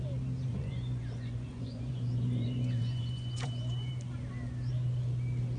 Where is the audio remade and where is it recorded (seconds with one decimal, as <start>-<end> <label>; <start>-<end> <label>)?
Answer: 0.0-0.5 recorded; 0.5-3.9 remade; 3.9-5.6 recorded